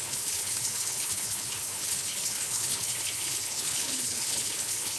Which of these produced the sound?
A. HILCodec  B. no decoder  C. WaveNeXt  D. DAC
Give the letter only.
A